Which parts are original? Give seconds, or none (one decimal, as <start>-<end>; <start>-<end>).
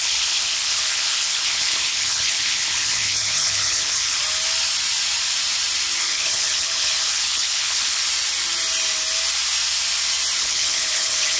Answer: 4.2-6.0; 8.0-10.4